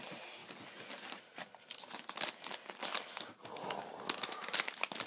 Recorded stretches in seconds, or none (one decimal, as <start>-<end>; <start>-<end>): 0.0-5.1